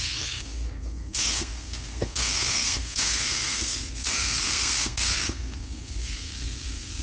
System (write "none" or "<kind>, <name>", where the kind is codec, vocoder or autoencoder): codec, SNAC